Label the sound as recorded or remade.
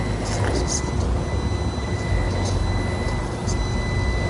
recorded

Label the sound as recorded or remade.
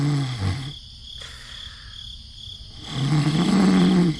recorded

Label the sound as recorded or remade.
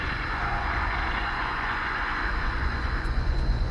remade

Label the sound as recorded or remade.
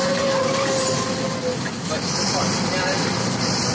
recorded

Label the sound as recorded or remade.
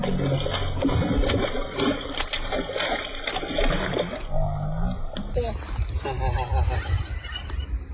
recorded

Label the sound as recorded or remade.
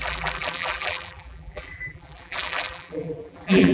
remade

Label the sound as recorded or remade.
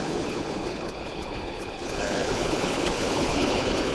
remade